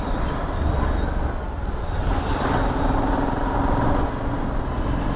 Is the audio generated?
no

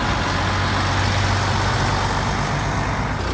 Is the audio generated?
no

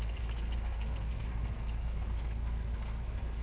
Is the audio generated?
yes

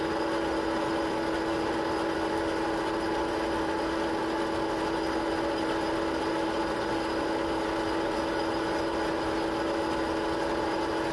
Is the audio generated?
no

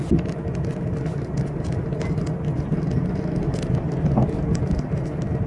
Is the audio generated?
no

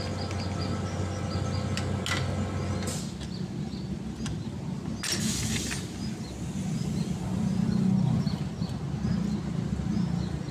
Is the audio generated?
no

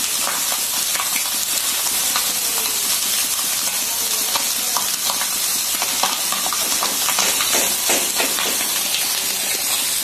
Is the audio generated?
no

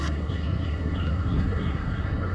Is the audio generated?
yes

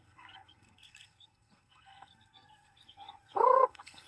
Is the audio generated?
yes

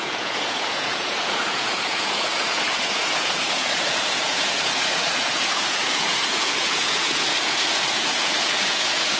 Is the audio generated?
yes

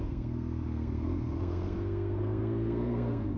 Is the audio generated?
yes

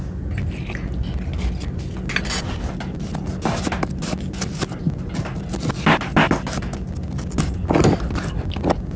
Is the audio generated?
no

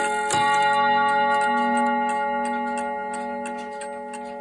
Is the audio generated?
no